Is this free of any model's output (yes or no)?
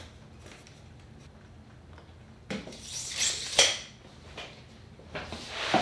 yes